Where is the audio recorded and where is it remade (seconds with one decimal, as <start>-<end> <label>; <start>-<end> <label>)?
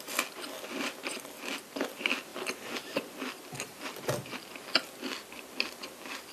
0.0-6.3 recorded